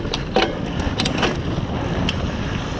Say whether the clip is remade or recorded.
recorded